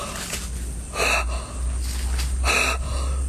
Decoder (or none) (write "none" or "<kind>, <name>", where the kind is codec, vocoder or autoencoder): none